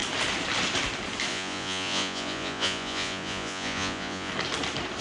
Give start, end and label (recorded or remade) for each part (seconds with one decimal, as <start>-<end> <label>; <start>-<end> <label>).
0.0-1.3 recorded; 1.3-4.3 remade; 4.3-5.0 recorded

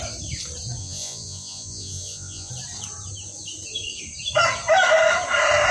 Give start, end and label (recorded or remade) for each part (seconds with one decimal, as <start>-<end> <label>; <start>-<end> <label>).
0.0-0.8 recorded; 0.8-2.5 remade; 2.5-5.7 recorded

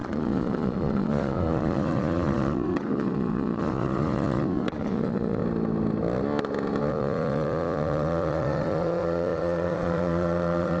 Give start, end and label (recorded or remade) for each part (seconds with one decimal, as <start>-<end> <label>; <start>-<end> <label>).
0.0-5.4 remade; 5.4-6.9 recorded; 6.9-10.8 remade

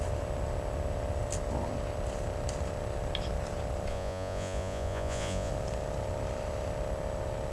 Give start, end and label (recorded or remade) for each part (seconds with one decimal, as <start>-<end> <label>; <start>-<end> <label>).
0.0-3.9 recorded; 3.9-5.5 remade; 5.5-7.5 recorded

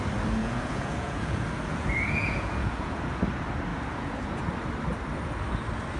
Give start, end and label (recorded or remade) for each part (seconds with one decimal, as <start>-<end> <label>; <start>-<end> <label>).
0.0-0.4 recorded; 0.4-3.2 remade; 3.2-3.7 recorded; 3.7-4.4 remade; 4.4-6.0 recorded

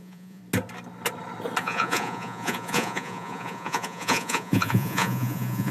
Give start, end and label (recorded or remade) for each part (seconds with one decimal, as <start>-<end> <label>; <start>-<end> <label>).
0.0-0.4 remade; 0.4-1.6 recorded; 1.6-5.7 remade